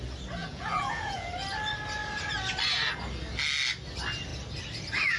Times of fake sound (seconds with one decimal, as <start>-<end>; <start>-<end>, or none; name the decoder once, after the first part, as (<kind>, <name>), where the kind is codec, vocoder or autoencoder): 0.4-1.3 (vocoder, Vocos)